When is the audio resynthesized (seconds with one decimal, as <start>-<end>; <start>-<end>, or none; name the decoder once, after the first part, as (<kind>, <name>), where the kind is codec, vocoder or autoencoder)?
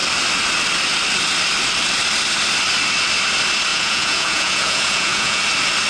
3.7-5.4 (vocoder, Vocos)